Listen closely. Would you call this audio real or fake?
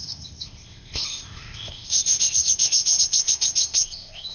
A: fake